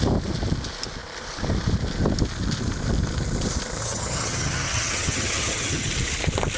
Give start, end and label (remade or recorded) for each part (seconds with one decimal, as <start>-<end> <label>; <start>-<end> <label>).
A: 0.0-3.8 recorded; 3.8-5.9 remade; 5.9-6.6 recorded